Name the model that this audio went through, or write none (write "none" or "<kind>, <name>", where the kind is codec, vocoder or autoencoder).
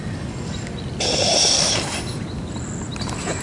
none